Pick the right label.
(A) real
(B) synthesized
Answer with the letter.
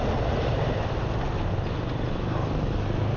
A